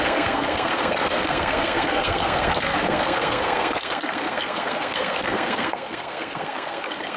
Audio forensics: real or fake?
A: fake